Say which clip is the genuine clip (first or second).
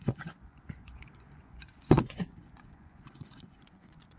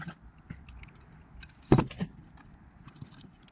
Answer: second